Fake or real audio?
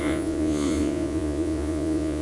fake